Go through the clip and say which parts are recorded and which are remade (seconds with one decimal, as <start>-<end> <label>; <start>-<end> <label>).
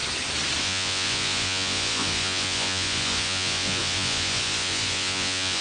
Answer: 0.0-0.6 recorded; 0.6-5.6 remade